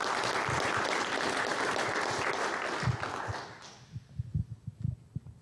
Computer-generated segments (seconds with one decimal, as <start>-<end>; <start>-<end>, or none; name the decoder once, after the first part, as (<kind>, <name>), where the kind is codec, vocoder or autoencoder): none